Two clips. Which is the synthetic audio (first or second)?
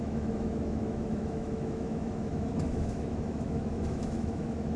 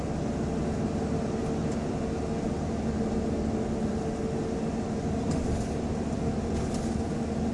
first